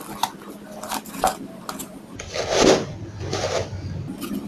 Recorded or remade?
recorded